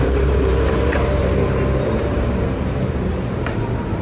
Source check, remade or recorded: remade